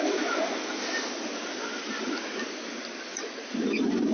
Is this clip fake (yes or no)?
no